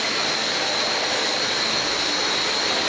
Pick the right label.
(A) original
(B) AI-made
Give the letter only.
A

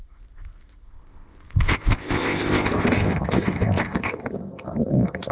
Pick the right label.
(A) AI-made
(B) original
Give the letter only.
A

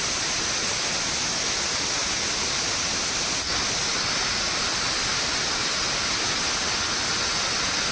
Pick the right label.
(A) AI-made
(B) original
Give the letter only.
B